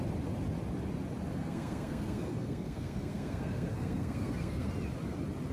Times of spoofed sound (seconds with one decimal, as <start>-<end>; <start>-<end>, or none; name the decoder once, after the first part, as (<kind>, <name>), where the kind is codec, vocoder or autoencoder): 1.4-4.7 (codec, SNAC)